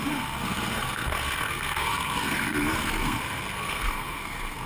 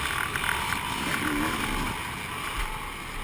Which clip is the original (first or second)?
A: second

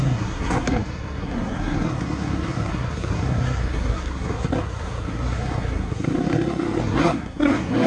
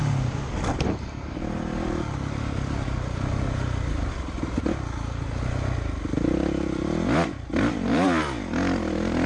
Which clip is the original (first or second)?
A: second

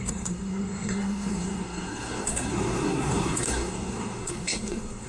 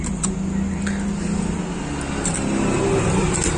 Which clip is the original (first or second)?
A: second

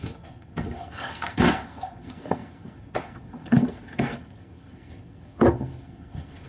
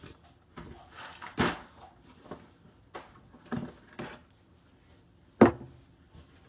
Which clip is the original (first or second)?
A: second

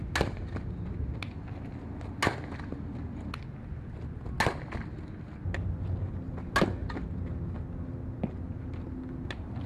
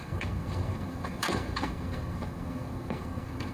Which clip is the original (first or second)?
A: first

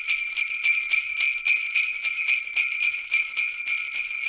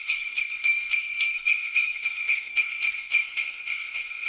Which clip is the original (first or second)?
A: first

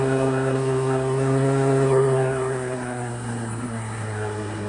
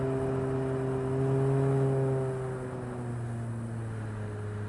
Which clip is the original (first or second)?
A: second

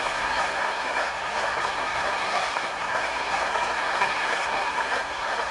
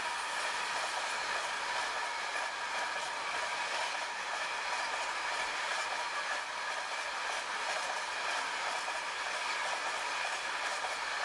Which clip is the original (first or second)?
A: second